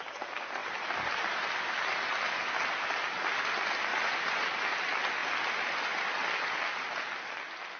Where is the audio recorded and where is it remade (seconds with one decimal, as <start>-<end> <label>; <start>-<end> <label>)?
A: 0.0-0.6 recorded; 0.6-1.5 remade; 1.5-3.9 recorded; 3.9-4.6 remade; 4.6-7.8 recorded